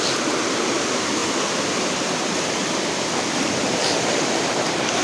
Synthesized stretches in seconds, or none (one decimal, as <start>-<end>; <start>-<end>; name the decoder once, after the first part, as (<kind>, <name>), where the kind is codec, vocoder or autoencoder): none